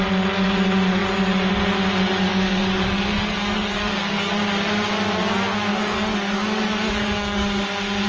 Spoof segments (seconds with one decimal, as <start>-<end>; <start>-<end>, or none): 2.3-4.3; 5.7-7.6